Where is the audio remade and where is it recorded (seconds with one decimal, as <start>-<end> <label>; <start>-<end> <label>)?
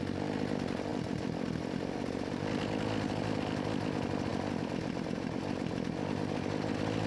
0.0-7.1 recorded